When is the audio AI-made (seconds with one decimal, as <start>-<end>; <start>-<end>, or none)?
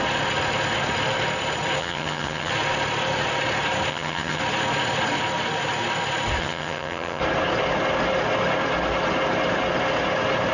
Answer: 1.8-2.5; 3.9-4.4; 6.4-7.2